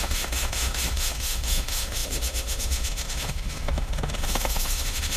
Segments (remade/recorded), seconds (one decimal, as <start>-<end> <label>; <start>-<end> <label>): 0.0-5.2 remade